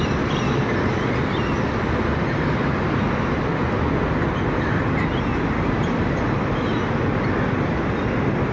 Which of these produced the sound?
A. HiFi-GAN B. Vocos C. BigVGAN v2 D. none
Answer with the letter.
D